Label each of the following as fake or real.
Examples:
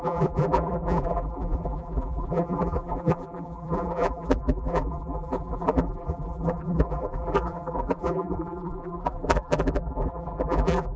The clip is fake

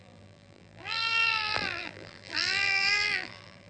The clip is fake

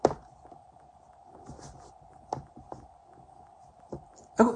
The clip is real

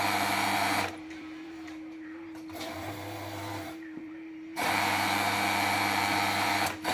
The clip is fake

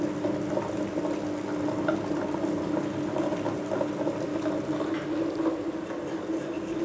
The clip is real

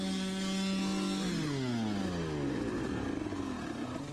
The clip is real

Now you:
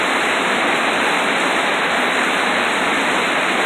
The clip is fake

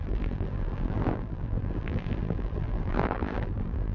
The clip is fake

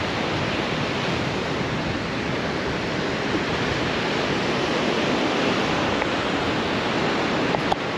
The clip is real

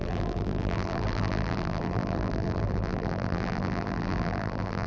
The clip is fake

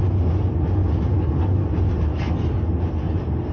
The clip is real